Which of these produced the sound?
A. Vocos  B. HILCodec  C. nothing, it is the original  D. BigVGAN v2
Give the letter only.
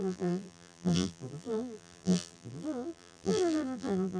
D